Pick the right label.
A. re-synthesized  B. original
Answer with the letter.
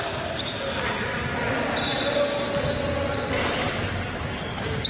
B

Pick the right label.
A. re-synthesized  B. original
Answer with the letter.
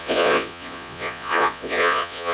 A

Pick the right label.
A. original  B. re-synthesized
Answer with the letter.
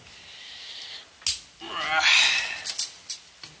A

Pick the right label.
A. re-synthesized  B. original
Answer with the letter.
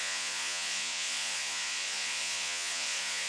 A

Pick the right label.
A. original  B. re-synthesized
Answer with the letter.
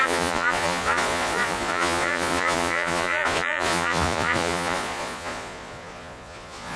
B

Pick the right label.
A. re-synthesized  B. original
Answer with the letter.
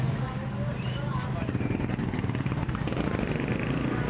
B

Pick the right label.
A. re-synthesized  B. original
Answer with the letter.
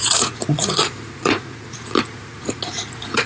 A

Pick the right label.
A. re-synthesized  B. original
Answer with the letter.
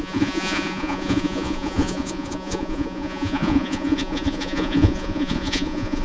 A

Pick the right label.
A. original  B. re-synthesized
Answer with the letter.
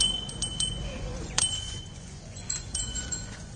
B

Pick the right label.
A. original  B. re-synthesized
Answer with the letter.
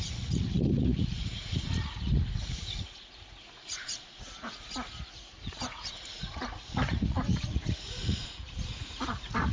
B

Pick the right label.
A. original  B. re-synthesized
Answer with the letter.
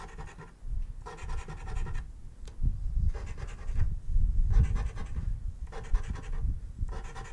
A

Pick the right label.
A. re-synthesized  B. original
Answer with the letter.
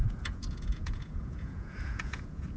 A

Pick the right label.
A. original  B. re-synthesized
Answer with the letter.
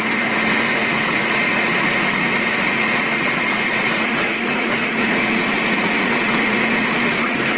B